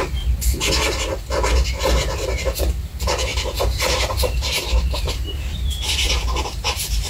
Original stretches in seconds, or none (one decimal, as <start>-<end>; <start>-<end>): 0.0-3.3